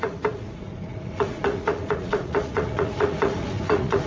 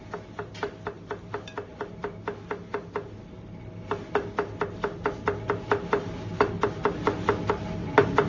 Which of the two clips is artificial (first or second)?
first